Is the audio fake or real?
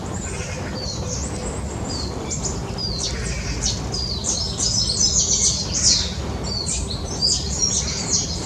real